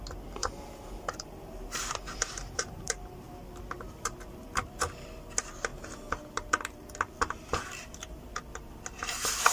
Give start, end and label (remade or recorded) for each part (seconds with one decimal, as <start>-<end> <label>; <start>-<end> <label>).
0.0-0.4 recorded; 0.4-2.9 remade; 2.9-9.5 recorded